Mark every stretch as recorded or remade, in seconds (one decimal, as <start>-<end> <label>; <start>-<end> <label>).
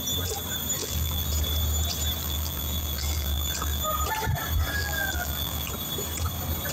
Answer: 0.0-0.8 recorded; 0.8-1.3 remade; 1.3-2.2 recorded; 2.2-3.8 remade; 3.8-4.8 recorded; 4.8-5.7 remade; 5.7-6.7 recorded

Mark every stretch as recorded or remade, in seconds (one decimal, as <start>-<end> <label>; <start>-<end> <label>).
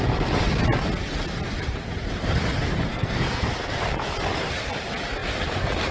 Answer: 0.0-2.9 recorded; 2.9-3.5 remade; 3.5-5.9 recorded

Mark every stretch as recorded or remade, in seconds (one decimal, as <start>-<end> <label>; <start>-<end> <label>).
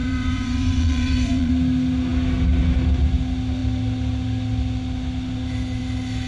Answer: 0.0-1.5 remade; 1.5-6.3 recorded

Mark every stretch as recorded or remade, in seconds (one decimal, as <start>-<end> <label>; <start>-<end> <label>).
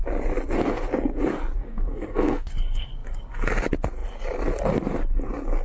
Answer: 0.0-1.6 recorded; 1.6-2.5 remade; 2.5-5.6 recorded